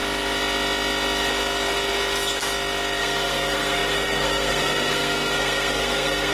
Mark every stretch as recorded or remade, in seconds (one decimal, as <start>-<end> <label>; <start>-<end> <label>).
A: 0.0-3.0 recorded; 3.0-6.3 remade